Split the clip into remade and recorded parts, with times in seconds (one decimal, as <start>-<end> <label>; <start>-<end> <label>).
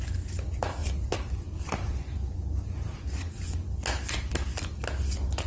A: 0.0-0.8 recorded; 0.8-3.2 remade; 3.2-5.5 recorded